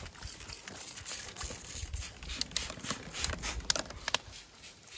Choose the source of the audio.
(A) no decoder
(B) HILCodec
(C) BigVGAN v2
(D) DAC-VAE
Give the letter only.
A